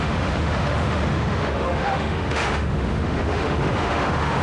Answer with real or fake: fake